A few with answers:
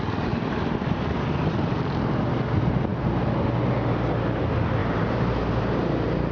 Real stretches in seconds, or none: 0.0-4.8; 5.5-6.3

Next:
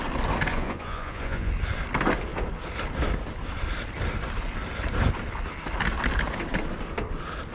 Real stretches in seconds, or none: 0.0-0.5; 1.5-7.5

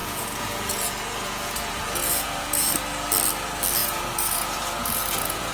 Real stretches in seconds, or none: 2.7-3.8

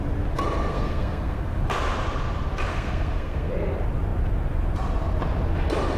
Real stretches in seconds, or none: 0.0-0.7; 1.6-2.7; 3.5-6.0

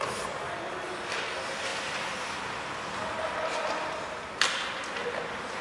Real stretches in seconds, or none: 0.0-5.6

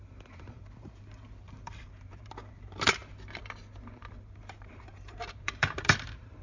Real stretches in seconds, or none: 3.0-4.2

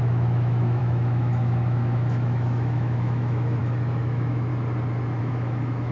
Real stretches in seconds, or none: 4.5-5.2